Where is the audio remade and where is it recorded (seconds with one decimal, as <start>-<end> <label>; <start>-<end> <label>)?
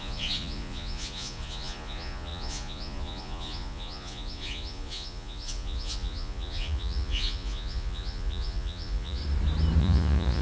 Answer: 0.0-9.2 remade; 9.2-9.8 recorded; 9.8-10.4 remade